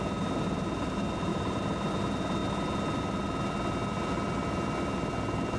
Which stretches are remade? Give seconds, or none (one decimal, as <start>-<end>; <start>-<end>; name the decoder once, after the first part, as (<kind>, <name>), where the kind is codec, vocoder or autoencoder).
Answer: none